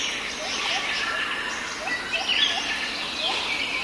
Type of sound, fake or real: real